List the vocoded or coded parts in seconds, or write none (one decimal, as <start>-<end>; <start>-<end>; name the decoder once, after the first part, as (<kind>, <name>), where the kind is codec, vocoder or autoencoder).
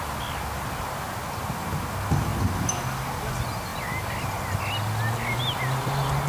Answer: none